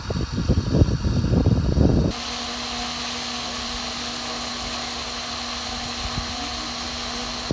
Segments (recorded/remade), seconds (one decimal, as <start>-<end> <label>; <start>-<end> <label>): 0.0-7.5 recorded